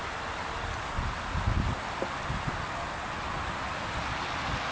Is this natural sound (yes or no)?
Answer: yes